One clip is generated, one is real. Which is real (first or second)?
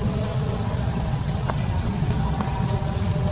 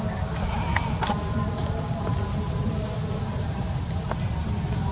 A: second